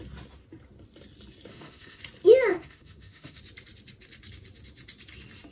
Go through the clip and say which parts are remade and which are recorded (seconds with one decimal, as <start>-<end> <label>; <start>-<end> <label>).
0.0-1.5 recorded; 1.5-2.0 remade; 2.0-2.5 recorded; 2.5-3.4 remade; 3.4-5.5 recorded